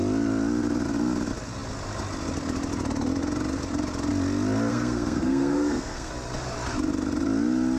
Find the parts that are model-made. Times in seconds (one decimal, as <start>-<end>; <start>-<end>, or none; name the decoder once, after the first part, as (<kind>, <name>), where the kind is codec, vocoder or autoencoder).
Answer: 4.7-6.1 (codec, SNAC)